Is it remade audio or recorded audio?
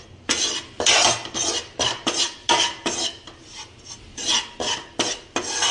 recorded